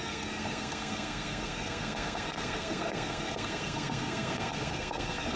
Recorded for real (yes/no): no